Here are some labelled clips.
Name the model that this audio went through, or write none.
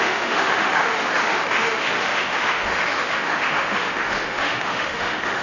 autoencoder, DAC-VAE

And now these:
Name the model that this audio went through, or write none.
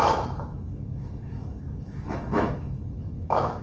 autoencoder, DAC-VAE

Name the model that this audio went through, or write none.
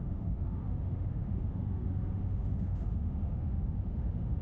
autoencoder, DAC-VAE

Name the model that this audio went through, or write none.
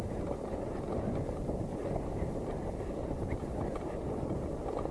none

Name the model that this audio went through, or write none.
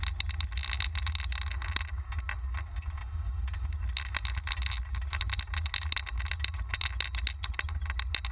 none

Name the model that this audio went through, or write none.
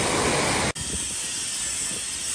none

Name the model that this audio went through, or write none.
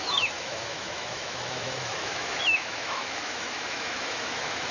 autoencoder, DAC-VAE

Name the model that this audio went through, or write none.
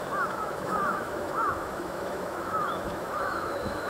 autoencoder, DAC-VAE